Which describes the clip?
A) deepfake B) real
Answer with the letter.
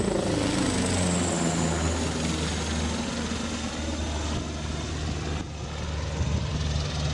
B